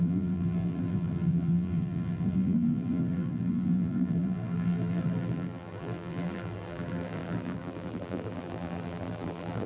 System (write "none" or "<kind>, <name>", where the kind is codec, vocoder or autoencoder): vocoder, BigVGAN v2